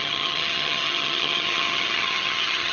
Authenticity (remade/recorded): remade